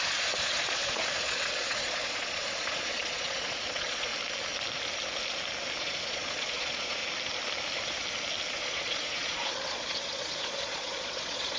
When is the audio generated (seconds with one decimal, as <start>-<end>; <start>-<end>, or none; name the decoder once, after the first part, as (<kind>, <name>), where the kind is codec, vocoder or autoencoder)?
0.0-4.1 (vocoder, Vocos); 5.8-7.0; 8.5-11.6